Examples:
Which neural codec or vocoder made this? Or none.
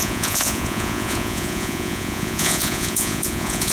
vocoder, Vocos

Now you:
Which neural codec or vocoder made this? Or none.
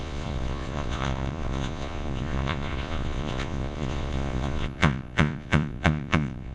vocoder, Vocos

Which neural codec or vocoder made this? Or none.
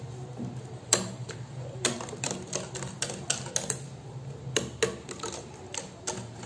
none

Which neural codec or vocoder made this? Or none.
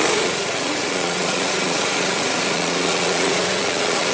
vocoder, Vocos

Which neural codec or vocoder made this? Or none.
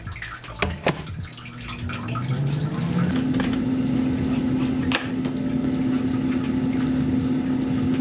none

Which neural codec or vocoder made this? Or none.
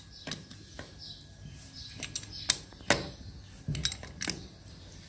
none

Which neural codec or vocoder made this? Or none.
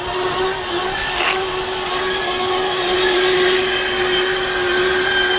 none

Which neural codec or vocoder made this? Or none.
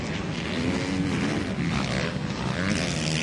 none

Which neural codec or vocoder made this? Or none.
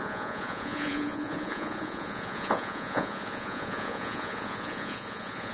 vocoder, Vocos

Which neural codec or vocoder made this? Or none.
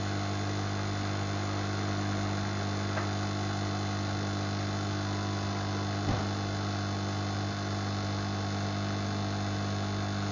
none